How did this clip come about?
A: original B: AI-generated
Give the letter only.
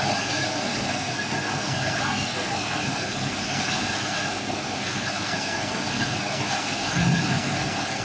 B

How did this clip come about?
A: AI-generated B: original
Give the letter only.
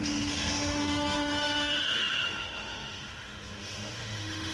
A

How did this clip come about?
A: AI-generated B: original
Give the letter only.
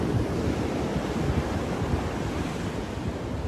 B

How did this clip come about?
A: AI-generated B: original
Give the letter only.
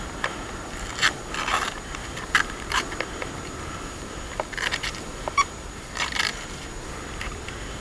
A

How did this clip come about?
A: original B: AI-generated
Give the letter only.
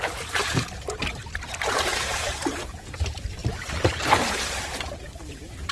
B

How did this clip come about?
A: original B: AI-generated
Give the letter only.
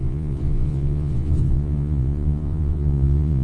B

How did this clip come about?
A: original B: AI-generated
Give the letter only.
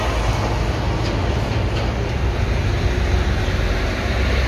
A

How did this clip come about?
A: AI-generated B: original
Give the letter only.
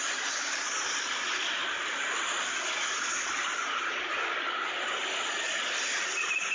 B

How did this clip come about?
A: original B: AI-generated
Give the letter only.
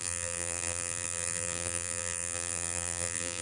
B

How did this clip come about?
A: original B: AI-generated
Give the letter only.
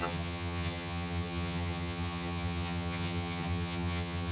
B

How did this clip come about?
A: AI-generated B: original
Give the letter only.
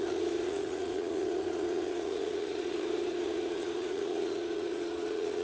A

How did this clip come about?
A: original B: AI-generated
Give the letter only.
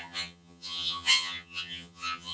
B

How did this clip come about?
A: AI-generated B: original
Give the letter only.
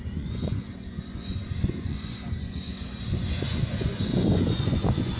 A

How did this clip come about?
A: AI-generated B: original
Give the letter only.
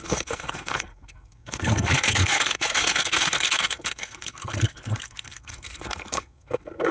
A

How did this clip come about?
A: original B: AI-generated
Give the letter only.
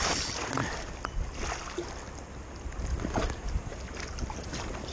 A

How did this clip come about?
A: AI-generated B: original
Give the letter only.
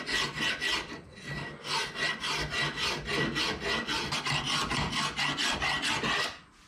B